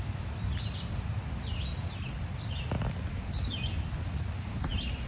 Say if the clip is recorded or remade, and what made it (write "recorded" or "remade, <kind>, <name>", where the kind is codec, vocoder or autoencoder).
recorded